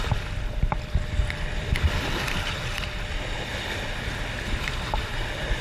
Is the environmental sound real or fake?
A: fake